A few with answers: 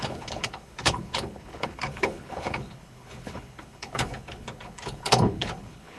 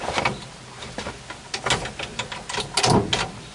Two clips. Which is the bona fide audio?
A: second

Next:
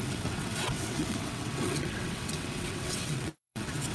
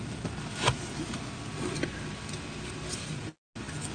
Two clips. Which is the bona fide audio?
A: second